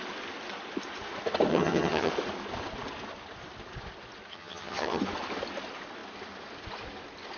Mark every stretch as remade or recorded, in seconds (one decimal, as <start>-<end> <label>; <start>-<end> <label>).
0.0-1.5 recorded; 1.5-2.1 remade; 2.1-4.3 recorded; 4.3-5.0 remade; 5.0-7.4 recorded